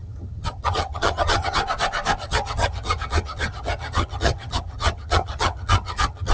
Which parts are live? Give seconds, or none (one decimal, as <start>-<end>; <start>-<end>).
1.6-2.2